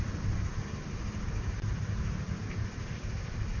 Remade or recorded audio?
recorded